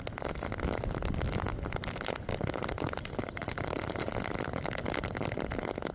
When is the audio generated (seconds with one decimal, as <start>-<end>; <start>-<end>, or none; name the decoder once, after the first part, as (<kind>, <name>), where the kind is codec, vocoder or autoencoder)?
none